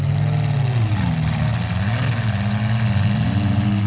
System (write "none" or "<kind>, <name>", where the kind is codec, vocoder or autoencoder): none